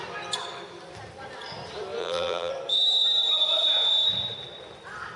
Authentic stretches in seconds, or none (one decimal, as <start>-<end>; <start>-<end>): 0.0-2.0; 2.5-5.2